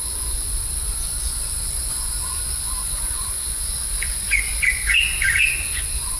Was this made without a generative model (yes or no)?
no